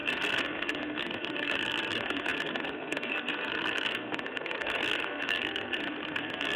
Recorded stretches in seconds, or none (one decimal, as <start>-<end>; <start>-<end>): none